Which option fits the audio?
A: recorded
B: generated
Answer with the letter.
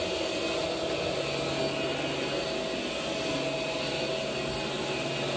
A